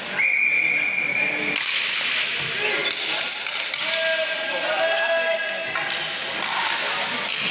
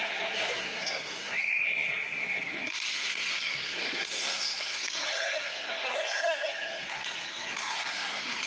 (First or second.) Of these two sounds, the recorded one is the first